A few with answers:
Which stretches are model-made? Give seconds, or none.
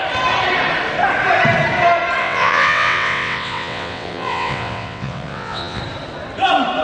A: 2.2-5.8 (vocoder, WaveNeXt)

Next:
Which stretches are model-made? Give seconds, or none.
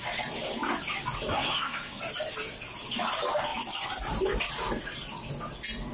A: 1.3-2.0 (codec, SNAC)